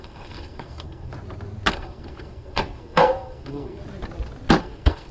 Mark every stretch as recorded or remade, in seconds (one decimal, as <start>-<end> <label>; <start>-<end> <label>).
0.0-1.1 remade; 1.1-1.7 recorded; 1.7-3.8 remade; 3.8-4.6 recorded; 4.6-5.1 remade